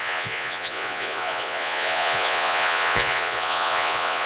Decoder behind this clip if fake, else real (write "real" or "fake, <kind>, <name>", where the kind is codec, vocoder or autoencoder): fake, vocoder, Vocos